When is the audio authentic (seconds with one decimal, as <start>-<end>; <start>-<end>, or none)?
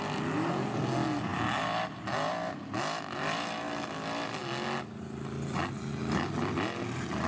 0.0-7.3